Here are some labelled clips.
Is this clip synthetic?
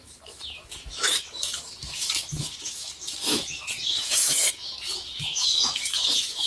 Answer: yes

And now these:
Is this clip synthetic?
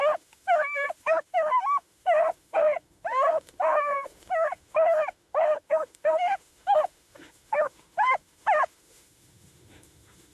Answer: yes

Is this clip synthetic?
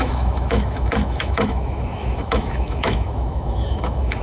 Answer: yes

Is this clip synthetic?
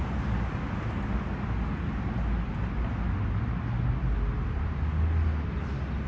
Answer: no